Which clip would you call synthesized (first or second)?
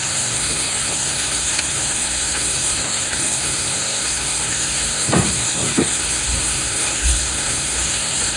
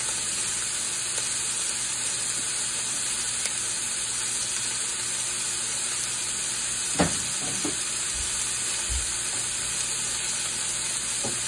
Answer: first